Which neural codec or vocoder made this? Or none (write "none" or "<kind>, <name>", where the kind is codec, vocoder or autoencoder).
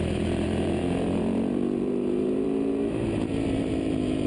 vocoder, BigVGAN v2